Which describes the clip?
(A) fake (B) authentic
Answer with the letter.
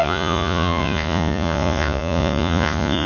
A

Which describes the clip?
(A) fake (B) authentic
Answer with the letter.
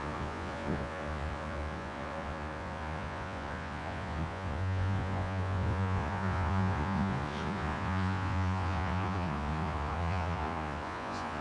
A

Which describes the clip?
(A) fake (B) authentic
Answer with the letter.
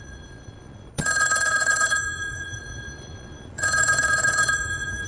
A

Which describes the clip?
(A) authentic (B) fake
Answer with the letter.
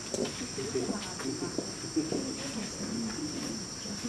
A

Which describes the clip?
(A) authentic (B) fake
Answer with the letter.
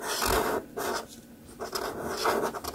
A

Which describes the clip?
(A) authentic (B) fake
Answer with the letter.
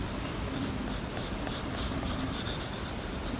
A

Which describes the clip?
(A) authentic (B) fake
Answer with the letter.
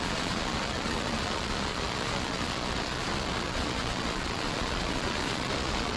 B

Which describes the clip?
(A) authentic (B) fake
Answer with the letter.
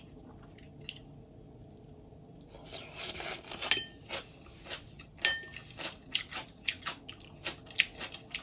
A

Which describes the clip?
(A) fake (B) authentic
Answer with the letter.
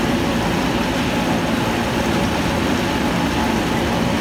B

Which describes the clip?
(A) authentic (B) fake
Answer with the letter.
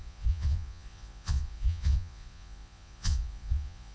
B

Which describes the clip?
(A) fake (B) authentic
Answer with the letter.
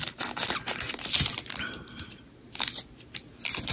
B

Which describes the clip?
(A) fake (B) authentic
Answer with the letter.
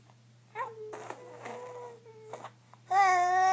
B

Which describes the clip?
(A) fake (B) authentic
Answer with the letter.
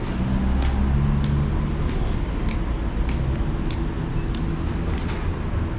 B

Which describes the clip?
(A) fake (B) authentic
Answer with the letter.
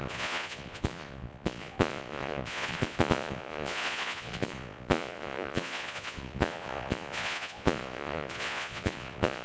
A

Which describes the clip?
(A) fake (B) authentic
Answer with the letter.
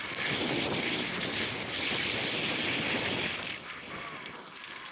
B